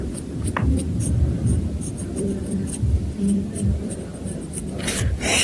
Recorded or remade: remade